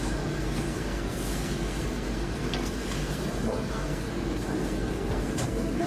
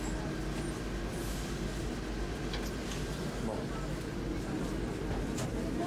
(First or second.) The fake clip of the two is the first